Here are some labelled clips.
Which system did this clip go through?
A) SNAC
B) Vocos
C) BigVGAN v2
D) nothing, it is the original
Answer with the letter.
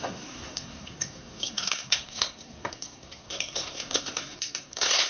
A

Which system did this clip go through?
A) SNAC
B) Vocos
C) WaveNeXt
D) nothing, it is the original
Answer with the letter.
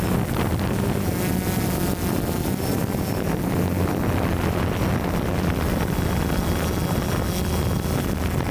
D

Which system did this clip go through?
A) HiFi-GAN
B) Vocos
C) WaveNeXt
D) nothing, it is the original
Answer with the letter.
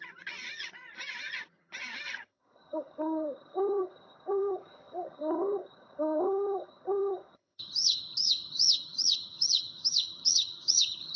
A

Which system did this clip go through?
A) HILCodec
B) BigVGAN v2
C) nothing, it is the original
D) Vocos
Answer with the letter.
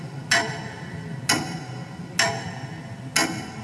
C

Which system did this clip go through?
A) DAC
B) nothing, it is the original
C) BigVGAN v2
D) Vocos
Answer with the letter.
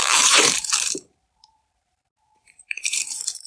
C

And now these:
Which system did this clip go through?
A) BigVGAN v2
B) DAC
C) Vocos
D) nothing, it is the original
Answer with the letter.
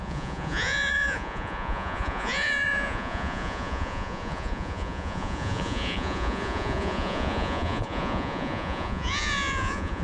C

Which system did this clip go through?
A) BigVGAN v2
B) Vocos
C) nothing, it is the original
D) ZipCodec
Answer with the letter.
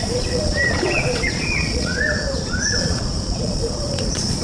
B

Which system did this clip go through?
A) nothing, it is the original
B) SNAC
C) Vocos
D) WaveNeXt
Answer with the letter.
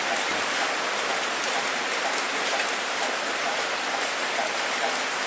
A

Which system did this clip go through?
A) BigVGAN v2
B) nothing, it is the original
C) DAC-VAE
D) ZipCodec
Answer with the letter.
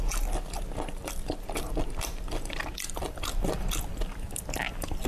B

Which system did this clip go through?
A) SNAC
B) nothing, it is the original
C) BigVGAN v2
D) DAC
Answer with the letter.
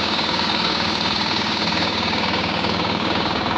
D